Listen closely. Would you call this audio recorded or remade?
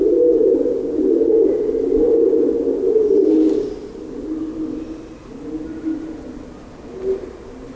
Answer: recorded